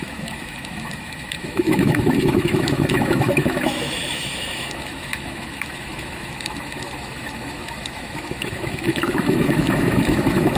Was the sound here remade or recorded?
remade